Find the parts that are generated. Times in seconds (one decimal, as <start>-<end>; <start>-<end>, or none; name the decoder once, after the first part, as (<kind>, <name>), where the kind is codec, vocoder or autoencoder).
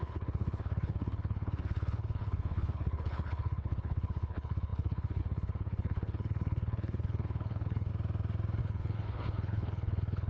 0.0-7.9 (codec, HILCodec); 8.6-10.3